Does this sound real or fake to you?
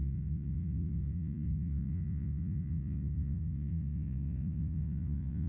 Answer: fake